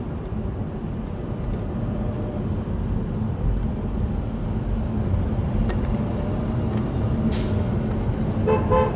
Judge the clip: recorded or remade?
recorded